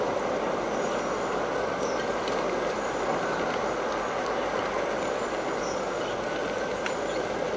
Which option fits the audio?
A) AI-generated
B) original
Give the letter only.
B